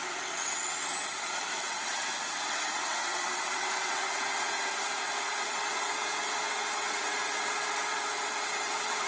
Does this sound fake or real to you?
fake